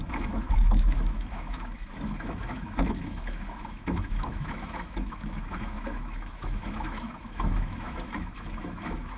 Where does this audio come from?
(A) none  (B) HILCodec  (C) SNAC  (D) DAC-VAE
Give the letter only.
D